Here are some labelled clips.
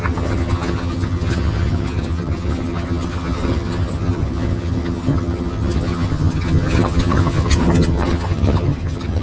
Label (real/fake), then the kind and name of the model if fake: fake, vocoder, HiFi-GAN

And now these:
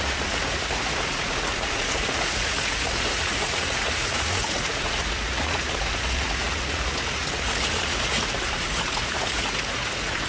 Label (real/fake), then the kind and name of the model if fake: fake, vocoder, Vocos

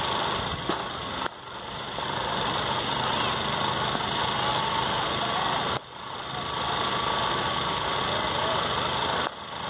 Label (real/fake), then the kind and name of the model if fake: real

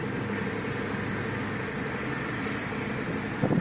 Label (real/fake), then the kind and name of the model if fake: real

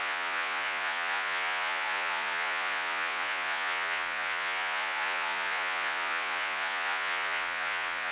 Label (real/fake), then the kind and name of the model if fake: fake, vocoder, Vocos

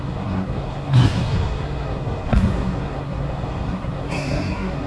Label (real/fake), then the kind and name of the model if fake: fake, codec, SNAC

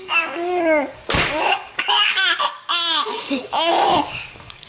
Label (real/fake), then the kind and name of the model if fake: fake, codec, DAC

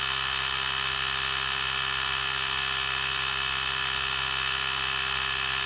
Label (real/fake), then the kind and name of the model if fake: real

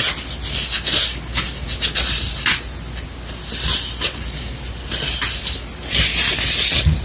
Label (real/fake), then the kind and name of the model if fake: real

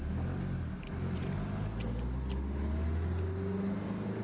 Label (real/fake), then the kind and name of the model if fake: real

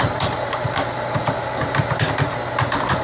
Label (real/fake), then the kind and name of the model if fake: real